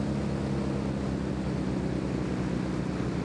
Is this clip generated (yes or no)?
no